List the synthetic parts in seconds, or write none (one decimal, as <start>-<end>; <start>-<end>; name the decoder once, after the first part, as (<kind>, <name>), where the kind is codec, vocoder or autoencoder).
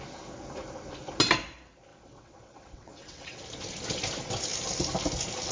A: 1.9-3.4 (vocoder, WaveNeXt)